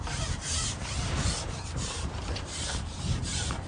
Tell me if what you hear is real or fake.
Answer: fake